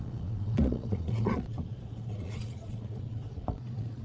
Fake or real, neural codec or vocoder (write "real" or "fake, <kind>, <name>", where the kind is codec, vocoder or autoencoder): fake, vocoder, Vocos